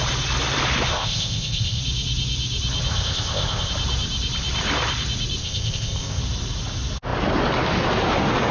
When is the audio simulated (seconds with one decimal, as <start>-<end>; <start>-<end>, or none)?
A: 0.9-1.8; 2.9-3.7; 5.4-6.2